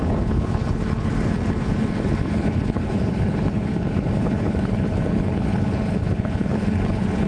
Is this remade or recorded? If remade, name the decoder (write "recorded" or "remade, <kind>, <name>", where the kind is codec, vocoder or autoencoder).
remade, codec, HILCodec